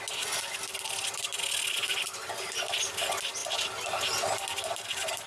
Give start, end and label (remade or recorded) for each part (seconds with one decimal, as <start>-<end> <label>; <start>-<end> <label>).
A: 0.0-5.3 recorded